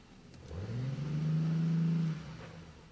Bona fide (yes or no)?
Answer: yes